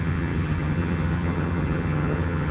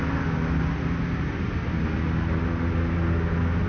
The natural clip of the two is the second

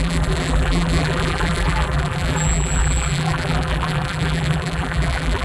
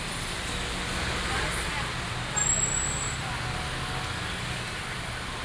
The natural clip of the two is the second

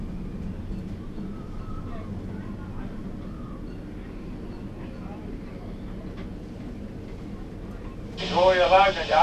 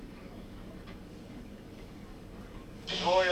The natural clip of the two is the first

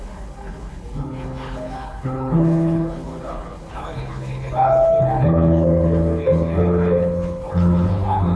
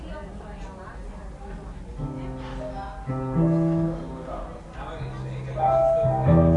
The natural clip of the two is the second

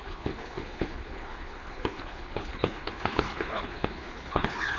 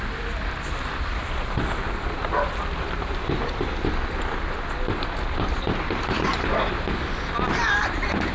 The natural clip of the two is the second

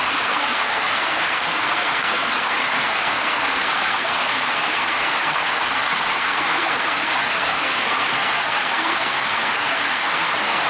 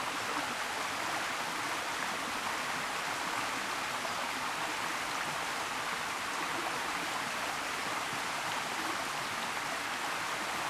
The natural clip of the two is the second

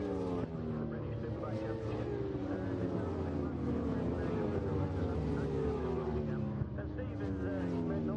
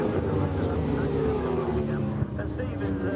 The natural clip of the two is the first